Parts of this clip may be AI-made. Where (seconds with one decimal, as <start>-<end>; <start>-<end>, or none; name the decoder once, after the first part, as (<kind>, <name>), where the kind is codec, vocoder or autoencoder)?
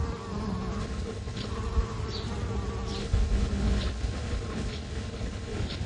0.8-1.5 (codec, HILCodec); 3.0-5.9